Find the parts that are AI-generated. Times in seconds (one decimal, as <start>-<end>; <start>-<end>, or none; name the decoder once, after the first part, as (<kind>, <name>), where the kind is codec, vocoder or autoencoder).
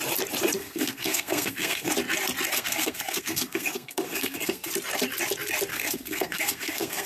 0.6-1.9 (codec, SNAC); 2.5-4.7; 5.7-7.1